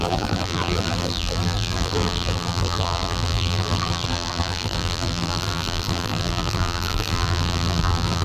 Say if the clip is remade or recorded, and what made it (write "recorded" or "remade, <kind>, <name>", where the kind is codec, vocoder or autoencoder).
remade, vocoder, BigVGAN v2